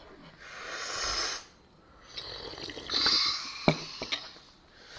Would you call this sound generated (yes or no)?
no